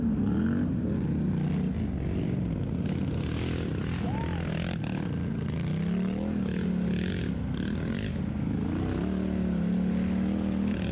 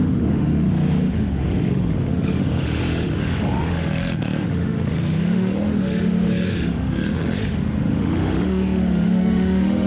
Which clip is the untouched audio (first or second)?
first